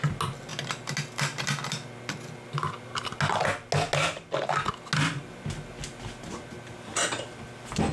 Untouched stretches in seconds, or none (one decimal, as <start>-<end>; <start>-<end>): 0.0-7.9